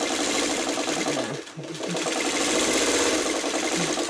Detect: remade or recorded recorded